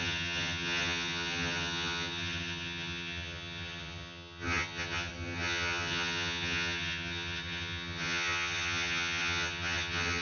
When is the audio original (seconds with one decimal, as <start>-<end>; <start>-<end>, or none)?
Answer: none